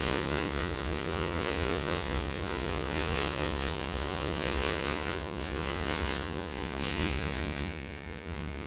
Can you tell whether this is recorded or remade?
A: remade